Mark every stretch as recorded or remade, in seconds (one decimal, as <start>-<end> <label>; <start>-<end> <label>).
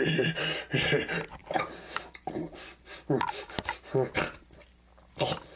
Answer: 0.0-5.6 recorded